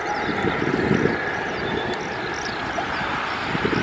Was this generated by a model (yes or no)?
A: no